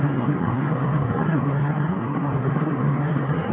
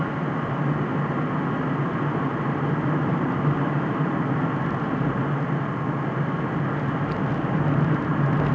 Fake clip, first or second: first